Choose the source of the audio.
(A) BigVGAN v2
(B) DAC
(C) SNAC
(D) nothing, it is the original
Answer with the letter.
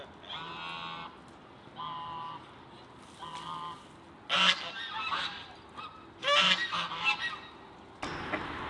D